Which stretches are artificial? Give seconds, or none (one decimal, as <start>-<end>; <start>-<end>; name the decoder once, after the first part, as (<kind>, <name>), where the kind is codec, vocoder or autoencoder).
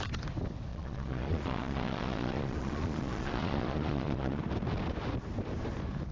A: 0.7-4.4 (vocoder, Vocos)